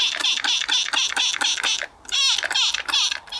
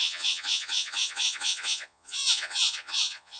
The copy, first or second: second